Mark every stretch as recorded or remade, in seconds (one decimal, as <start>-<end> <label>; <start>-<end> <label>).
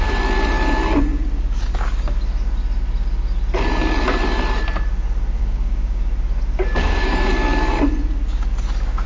0.0-5.4 recorded; 5.4-6.0 remade; 6.0-6.8 recorded; 6.8-7.3 remade; 7.3-9.1 recorded